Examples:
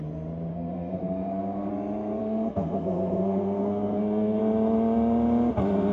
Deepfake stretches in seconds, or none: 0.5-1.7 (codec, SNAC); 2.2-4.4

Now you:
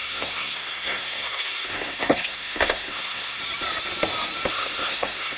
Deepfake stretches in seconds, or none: 0.0-3.4 (codec, SNAC); 4.5-5.4

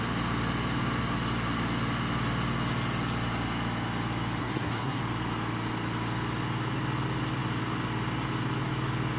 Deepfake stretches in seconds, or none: 4.4-5.0 (codec, SNAC)

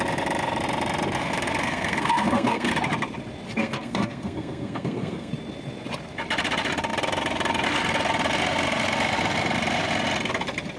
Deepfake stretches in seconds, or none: 1.2-2.7 (codec, SNAC); 3.5-5.3

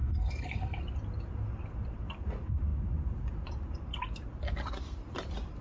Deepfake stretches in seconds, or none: 0.0-0.8 (codec, SNAC)

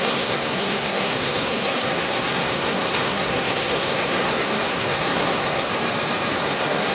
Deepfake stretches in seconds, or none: 0.0-5.7 (codec, SNAC); 6.3-6.9

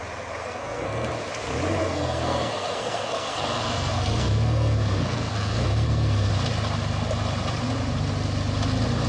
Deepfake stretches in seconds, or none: 0.4-1.1 (codec, SNAC); 1.8-6.3